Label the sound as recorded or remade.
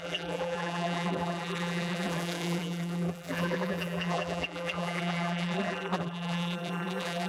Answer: remade